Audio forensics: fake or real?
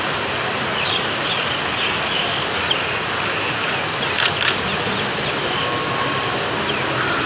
real